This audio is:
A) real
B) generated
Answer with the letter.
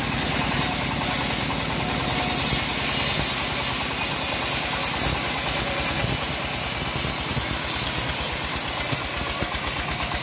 A